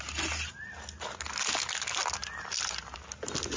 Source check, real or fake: real